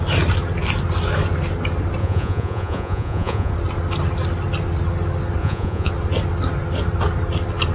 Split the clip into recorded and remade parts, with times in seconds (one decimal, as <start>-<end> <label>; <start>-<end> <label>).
0.0-2.0 recorded; 2.0-3.5 remade; 3.5-5.4 recorded; 5.4-5.9 remade; 5.9-7.7 recorded